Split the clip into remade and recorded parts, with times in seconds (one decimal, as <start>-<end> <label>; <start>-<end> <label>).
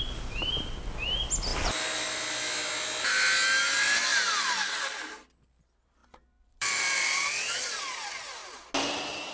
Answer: 0.0-6.0 recorded; 6.0-7.8 remade; 7.8-9.3 recorded